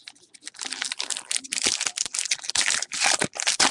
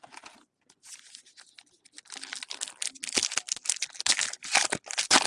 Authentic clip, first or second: second